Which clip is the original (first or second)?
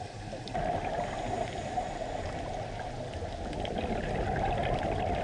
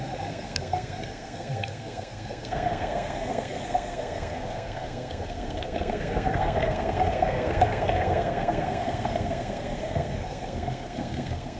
first